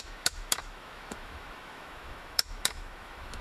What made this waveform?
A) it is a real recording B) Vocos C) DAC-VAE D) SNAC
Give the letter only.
C